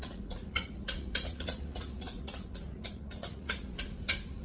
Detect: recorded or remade remade